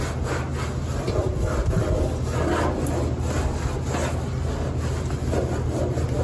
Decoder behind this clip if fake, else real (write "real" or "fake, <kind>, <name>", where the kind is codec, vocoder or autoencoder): real